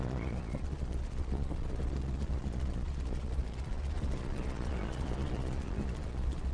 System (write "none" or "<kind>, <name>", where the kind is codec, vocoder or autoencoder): vocoder, Vocos